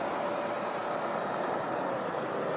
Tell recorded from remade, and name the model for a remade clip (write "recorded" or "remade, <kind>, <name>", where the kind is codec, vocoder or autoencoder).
recorded